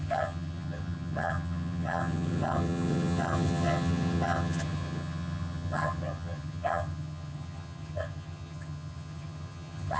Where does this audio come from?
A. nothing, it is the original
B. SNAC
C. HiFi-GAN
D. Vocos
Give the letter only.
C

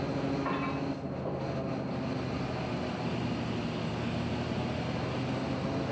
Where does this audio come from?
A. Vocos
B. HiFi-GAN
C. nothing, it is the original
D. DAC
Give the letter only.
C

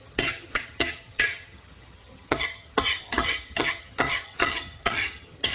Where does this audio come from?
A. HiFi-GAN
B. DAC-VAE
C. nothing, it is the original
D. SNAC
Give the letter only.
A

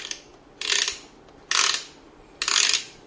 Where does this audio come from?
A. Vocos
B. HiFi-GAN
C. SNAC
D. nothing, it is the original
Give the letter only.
D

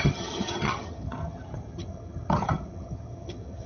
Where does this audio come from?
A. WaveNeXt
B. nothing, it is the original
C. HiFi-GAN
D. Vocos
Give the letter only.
C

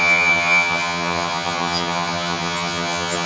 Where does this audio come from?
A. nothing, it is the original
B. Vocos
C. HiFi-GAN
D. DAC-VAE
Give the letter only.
C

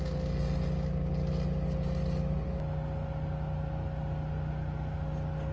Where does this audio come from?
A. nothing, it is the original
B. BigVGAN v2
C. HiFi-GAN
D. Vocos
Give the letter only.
A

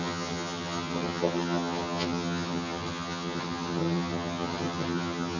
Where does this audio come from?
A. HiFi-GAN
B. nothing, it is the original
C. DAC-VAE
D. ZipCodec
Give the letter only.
A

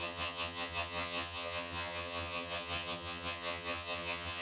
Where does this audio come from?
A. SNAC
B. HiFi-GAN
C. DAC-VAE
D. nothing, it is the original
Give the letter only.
B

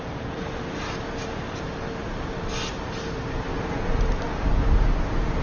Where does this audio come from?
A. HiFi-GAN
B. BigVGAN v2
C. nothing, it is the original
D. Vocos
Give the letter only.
C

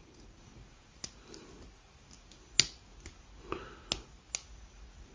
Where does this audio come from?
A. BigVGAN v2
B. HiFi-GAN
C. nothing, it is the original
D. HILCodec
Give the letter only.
C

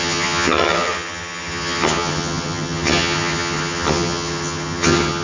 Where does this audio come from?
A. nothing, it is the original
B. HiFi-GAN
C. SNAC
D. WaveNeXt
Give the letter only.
B